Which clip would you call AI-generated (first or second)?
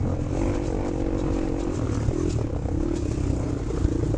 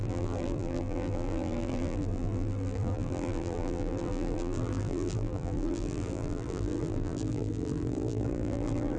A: second